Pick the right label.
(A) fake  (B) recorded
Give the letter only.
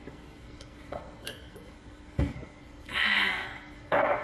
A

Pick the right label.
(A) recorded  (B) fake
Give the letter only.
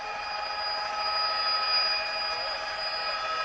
A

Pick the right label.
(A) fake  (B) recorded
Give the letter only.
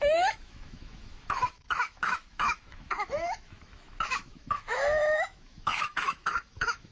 A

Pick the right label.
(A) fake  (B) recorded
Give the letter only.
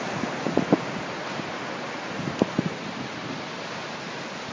B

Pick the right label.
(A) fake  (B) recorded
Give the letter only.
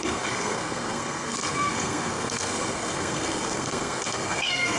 A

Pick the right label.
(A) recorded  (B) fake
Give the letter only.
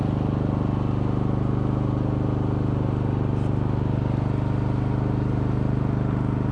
A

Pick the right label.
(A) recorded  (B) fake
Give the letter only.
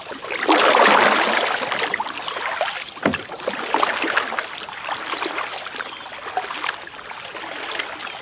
A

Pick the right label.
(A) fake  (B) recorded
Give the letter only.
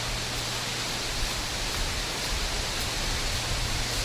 B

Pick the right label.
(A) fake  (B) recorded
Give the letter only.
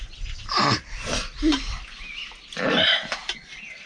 B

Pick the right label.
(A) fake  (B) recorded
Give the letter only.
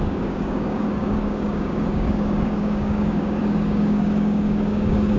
A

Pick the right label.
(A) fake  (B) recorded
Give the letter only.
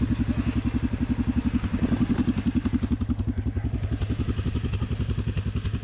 B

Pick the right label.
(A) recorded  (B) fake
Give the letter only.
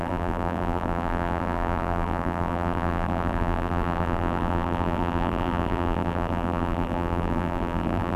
B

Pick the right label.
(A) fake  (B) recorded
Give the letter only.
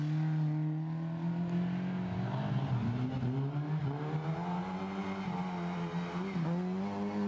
B